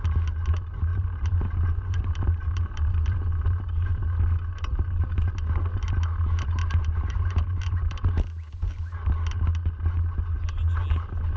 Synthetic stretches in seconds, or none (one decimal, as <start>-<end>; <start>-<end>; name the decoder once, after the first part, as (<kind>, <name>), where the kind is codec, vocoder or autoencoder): 0.9-5.3 (vocoder, BigVGAN v2); 6.6-8.8